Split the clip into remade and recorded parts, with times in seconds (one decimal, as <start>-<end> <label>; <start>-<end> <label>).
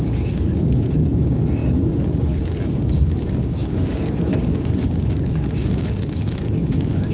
0.0-7.1 remade